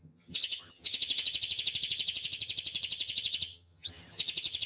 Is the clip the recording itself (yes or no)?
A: no